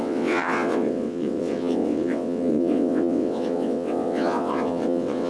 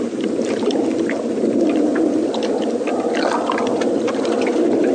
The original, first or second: second